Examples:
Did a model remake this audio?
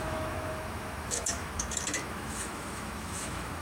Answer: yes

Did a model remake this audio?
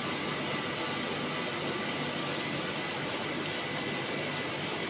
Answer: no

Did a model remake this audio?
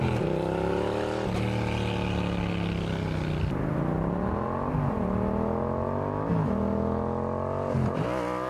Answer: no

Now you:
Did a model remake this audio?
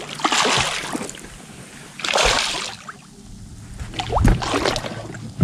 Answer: no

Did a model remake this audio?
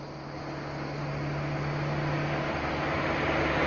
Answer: no